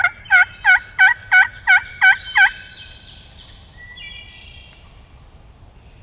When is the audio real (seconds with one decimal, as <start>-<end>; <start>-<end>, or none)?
0.0-6.0